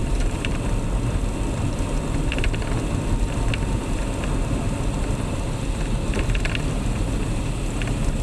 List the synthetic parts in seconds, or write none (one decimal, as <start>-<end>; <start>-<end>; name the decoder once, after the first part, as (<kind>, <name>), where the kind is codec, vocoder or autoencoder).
0.0-0.7 (vocoder, BigVGAN v2)